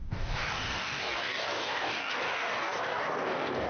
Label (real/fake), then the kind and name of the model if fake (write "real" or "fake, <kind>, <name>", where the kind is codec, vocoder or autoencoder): fake, codec, DAC